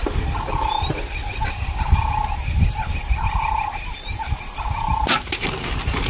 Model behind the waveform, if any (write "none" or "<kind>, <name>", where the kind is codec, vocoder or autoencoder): none